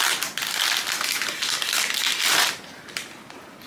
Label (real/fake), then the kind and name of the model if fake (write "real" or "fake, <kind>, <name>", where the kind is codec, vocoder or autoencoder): real